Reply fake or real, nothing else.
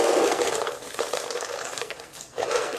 fake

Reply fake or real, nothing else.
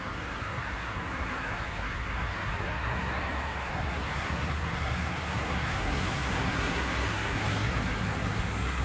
fake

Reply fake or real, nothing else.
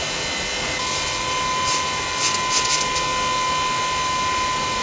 real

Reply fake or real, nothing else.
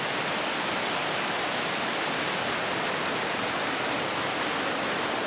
real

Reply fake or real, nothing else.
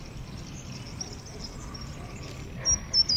real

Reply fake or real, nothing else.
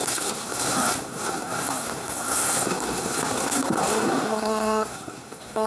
fake